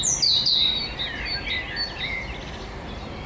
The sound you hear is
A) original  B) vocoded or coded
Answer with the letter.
A